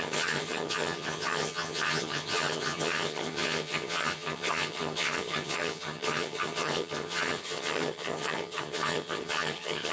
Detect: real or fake fake